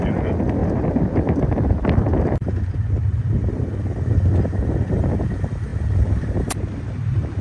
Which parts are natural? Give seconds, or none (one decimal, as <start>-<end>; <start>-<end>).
0.6-1.2